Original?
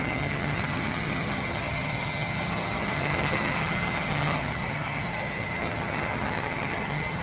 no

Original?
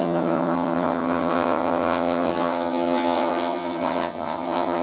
no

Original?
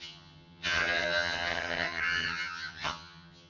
no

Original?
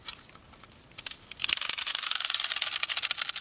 yes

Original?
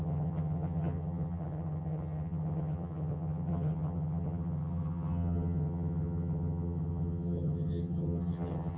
no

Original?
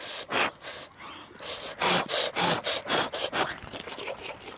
yes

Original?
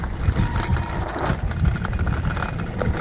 yes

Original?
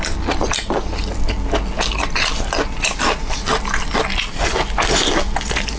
yes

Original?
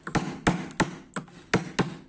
yes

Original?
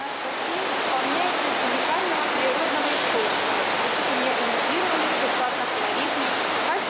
yes